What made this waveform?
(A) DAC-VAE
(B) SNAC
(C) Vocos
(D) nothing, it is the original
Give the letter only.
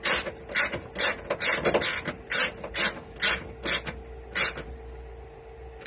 D